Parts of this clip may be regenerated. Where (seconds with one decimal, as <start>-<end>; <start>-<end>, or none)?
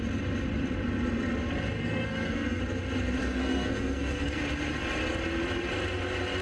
1.8-2.6; 3.2-4.4